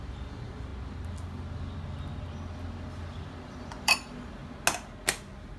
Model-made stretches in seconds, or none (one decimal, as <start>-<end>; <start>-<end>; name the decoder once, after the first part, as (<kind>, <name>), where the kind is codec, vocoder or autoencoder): 0.0-0.7 (vocoder, BigVGAN v2); 3.5-4.4